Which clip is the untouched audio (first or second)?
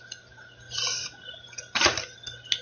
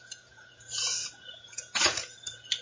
first